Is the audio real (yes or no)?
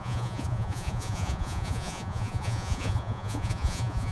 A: no